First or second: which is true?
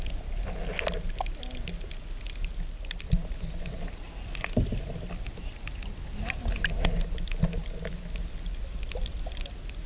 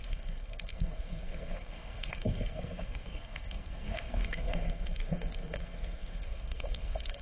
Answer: first